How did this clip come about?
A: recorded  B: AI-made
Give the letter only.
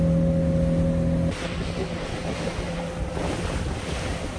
A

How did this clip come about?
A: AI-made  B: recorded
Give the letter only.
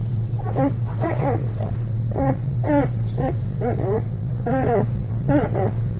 A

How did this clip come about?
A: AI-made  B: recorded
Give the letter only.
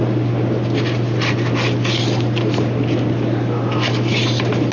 B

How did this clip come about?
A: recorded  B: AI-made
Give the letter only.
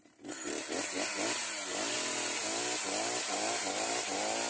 A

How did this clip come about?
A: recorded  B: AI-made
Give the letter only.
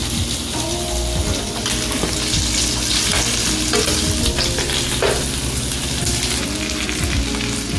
A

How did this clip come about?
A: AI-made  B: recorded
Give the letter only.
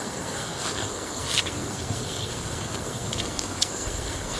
A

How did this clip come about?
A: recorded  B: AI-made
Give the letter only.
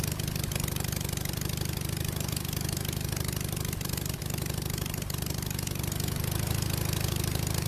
B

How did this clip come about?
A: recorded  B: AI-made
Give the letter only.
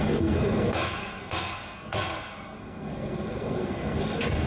B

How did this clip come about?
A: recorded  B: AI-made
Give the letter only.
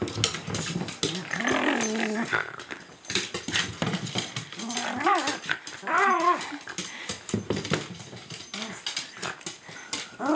A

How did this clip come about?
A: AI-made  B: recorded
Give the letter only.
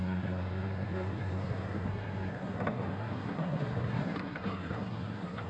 A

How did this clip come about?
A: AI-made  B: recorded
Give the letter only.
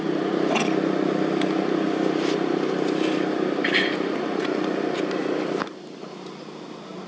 B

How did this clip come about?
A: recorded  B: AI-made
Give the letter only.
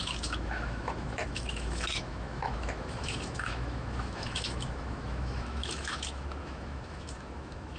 B